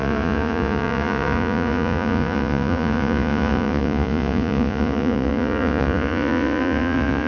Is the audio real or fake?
fake